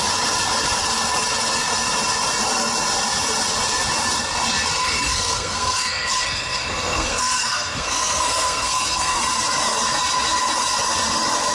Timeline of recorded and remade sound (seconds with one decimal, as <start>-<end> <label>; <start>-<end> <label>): 0.0-4.8 recorded; 4.8-9.2 remade; 9.2-11.5 recorded